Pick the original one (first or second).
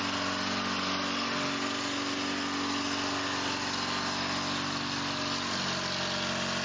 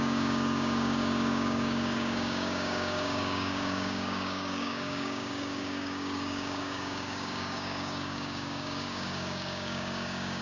first